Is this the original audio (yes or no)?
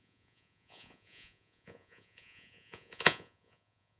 no